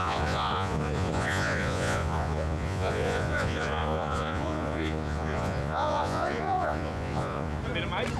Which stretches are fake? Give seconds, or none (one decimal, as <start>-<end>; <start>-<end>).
0.0-7.6